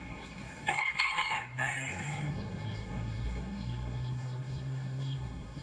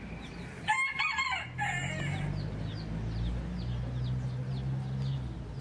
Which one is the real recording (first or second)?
second